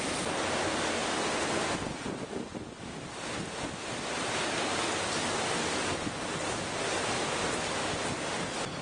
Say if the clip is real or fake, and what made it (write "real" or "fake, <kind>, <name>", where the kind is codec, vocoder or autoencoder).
real